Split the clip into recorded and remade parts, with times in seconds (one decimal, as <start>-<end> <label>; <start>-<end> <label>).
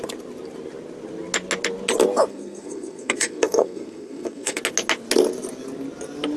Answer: 0.0-2.3 recorded; 2.3-4.6 remade; 4.6-6.4 recorded